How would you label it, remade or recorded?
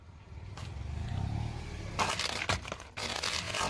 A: recorded